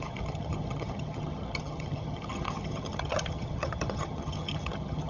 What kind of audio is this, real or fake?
fake